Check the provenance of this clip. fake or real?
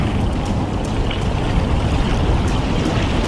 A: real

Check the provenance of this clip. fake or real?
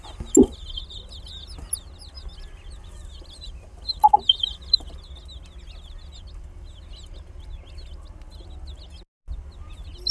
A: real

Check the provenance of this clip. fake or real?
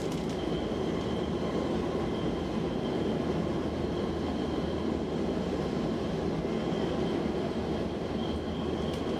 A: real